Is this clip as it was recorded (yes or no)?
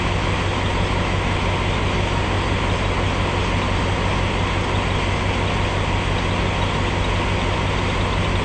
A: yes